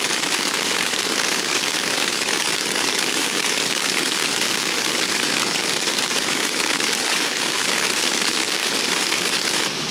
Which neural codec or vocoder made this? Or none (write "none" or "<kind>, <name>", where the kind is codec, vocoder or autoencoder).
codec, DAC